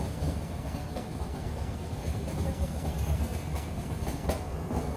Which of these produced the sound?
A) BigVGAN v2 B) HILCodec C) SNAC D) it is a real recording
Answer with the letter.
C